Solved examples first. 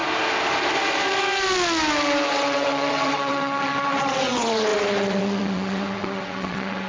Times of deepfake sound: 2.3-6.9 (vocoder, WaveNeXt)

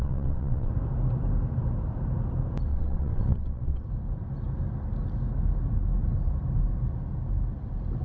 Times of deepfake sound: 0.0-0.7 (vocoder, WaveNeXt); 2.7-3.8

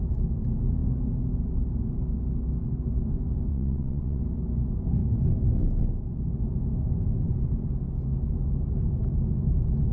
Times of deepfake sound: 3.5-4.2 (vocoder, WaveNeXt)

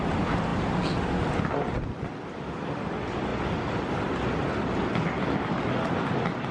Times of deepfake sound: none

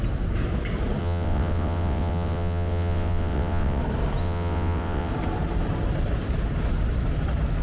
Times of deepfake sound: 1.0-3.8 (vocoder, WaveNeXt); 4.2-5.1

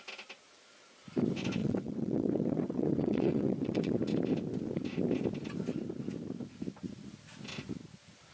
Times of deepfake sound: 1.6-4.0 (vocoder, WaveNeXt)